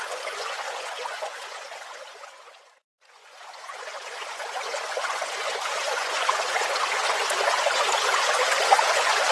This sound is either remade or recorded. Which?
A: remade